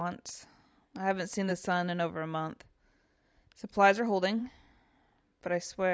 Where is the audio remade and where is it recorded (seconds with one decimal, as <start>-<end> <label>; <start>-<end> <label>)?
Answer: 0.0-5.9 recorded